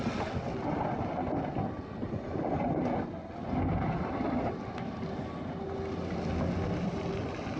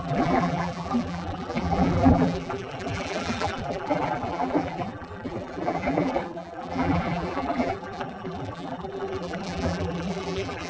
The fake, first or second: second